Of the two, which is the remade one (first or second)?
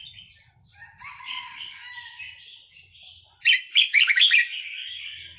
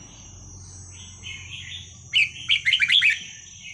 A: first